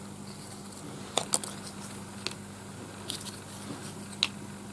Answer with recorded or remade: recorded